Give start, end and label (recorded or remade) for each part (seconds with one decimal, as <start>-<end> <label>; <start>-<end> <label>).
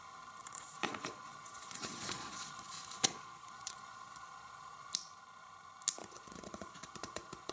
0.0-0.4 recorded; 0.4-4.9 remade; 4.9-6.0 recorded; 6.0-7.5 remade